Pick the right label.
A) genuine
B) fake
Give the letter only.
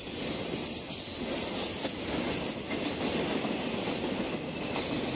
A